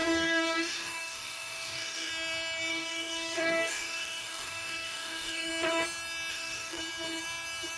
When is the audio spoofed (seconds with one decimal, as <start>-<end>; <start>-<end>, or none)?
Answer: 0.0-2.1; 2.7-5.5; 6.3-6.8